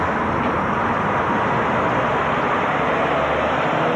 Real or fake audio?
real